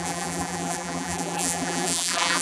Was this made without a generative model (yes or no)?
no